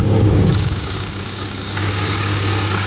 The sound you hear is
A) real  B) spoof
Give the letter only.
B